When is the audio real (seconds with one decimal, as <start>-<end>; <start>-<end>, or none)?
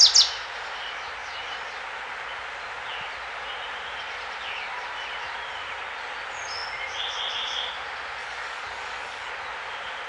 0.0-8.2; 9.3-10.1